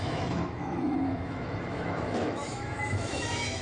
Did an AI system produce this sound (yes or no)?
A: yes